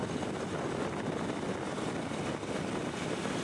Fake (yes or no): no